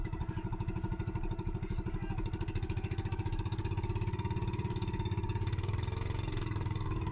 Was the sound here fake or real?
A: fake